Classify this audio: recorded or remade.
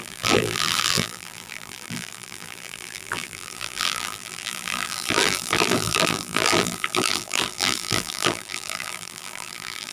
remade